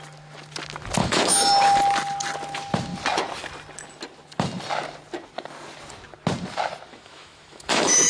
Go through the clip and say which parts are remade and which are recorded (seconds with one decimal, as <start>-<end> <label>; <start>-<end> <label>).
0.0-1.0 recorded; 1.0-1.5 remade; 1.5-6.9 recorded; 6.9-8.1 remade